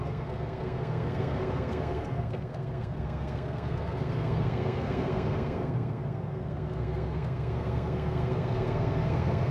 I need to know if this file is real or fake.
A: fake